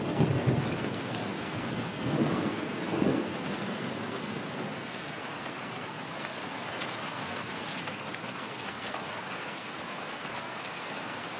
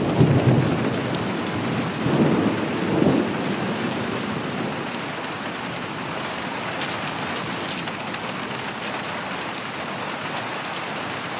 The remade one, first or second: first